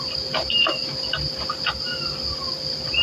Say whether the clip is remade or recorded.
recorded